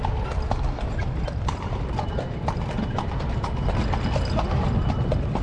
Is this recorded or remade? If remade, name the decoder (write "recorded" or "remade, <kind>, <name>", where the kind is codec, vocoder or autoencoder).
recorded